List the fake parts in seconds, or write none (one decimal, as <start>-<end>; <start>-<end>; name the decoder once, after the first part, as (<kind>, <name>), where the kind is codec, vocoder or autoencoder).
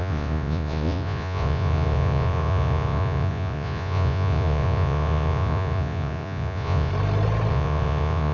0.0-6.9 (vocoder, Vocos); 7.5-8.3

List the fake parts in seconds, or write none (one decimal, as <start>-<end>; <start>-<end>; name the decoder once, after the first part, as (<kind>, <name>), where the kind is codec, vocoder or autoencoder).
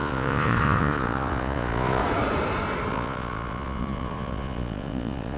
0.0-2.0 (vocoder, Vocos); 2.9-5.4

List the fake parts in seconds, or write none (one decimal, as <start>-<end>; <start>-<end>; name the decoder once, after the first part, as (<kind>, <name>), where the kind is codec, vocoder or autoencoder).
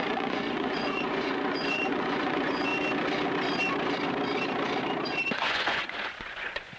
0.0-2.7 (vocoder, Vocos); 5.3-6.8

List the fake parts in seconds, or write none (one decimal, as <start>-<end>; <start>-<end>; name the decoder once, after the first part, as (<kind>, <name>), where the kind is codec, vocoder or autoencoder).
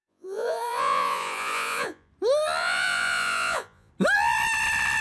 0.0-2.1 (vocoder, Vocos); 2.6-3.9